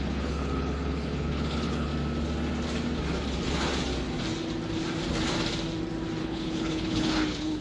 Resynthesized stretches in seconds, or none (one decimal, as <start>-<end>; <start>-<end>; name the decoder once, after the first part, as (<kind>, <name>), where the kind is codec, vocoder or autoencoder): 0.0-1.9 (codec, HILCodec); 6.2-7.6